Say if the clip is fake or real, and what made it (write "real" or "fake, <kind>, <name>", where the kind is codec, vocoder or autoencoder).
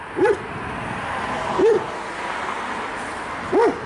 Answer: real